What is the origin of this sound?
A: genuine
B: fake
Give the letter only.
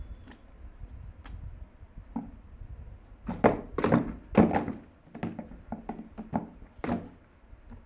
A